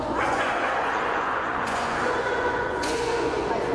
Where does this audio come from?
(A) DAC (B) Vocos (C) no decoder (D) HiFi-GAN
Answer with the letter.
B